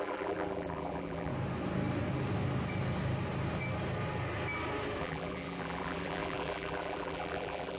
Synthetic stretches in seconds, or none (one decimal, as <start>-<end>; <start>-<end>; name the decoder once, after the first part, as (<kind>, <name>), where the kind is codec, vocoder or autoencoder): 0.0-1.3 (vocoder, BigVGAN v2); 5.0-7.8